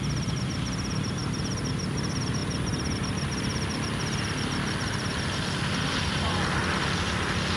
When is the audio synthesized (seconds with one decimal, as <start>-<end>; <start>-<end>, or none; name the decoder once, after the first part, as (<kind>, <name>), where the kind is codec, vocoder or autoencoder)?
none